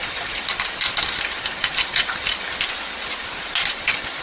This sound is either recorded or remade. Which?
recorded